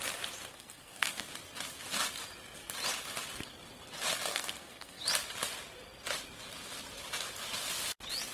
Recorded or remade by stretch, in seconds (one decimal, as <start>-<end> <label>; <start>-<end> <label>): 0.0-0.5 recorded; 0.5-1.3 remade; 1.3-4.3 recorded; 4.3-5.0 remade; 5.0-8.3 recorded